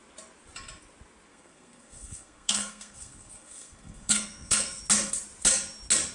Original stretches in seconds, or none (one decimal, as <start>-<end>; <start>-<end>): 0.0-1.3; 4.8-6.1